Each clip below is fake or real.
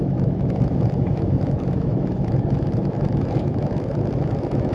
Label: fake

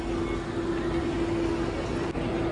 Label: real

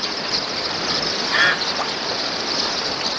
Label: real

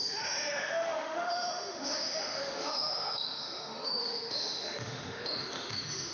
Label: fake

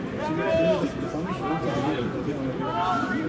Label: real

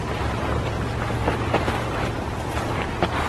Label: real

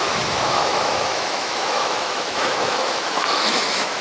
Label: fake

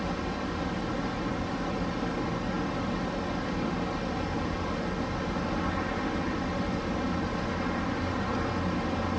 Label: real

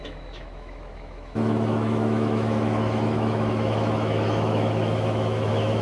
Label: fake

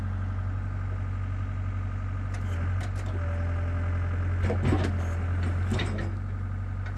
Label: real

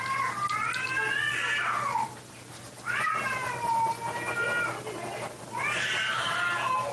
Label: real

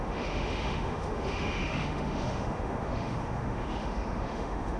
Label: fake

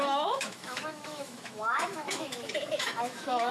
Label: fake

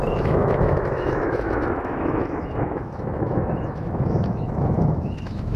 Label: fake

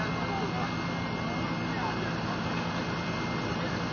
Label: real